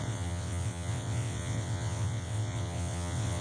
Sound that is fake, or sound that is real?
fake